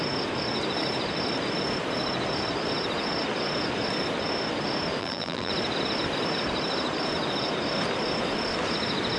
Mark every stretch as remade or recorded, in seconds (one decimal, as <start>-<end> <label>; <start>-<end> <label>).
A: 0.0-5.0 recorded; 5.0-5.5 remade; 5.5-9.2 recorded